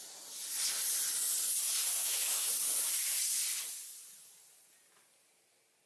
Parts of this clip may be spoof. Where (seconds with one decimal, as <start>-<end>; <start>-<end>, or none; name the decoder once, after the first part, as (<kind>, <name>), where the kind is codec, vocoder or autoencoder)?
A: 2.0-2.5 (autoencoder, DAC-VAE)